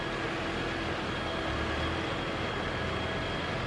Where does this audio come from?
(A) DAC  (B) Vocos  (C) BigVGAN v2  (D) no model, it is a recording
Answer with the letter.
D